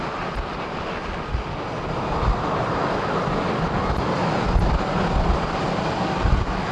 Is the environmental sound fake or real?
real